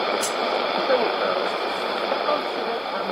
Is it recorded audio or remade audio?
remade